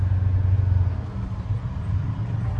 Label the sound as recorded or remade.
recorded